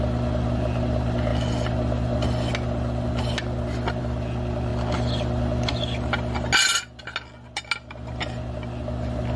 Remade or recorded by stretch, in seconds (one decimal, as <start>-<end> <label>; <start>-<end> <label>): 0.0-9.4 recorded